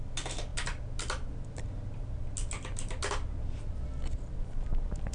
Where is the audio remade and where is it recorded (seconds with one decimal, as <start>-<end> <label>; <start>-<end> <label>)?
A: 0.0-5.1 recorded